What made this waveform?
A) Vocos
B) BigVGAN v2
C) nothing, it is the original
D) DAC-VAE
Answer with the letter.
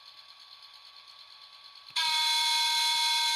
C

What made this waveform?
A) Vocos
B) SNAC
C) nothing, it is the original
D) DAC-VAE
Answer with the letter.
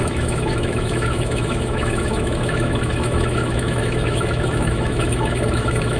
D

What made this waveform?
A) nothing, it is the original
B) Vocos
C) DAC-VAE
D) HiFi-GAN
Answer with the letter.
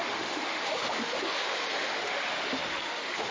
C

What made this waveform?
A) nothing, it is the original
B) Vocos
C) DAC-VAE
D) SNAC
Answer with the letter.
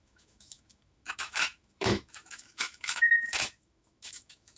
C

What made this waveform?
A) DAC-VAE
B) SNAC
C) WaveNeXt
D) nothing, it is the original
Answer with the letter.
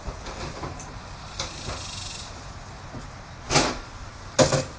D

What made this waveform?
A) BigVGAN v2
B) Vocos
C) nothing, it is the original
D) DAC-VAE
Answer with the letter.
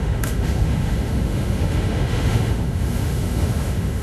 D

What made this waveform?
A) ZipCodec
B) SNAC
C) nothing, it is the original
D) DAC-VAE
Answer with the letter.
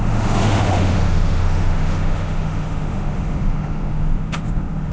D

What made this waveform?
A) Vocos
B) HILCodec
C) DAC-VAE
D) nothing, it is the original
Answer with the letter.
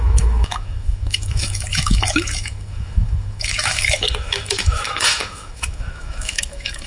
C